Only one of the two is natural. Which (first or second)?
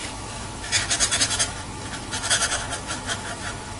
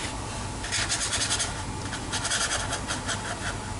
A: second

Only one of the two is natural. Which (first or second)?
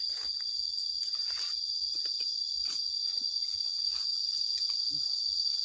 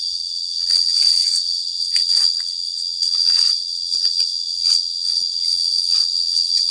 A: first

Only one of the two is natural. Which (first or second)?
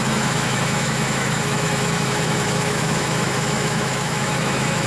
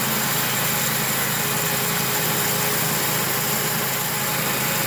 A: second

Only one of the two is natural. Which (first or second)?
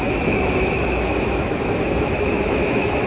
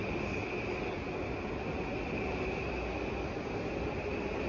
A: second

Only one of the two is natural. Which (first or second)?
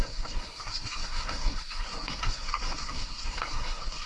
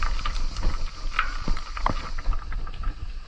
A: second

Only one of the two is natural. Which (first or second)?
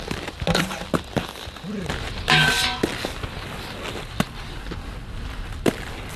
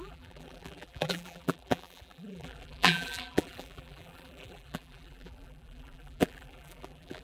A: first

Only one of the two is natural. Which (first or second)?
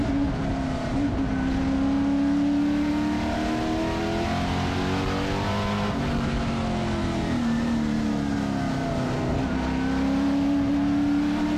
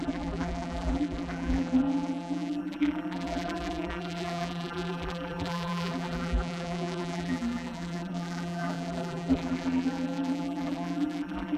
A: first